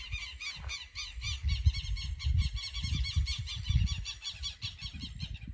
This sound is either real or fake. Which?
real